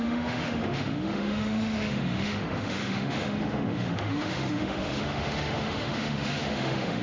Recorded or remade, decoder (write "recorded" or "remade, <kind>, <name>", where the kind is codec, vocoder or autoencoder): remade, autoencoder, DAC-VAE